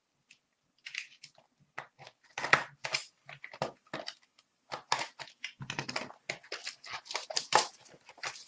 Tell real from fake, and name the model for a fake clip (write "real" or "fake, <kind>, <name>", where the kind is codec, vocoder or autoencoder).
real